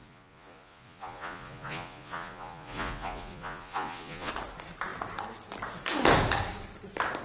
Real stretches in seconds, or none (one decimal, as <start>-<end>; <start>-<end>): 4.3-7.2